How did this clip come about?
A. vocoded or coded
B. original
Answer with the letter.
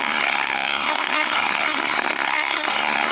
A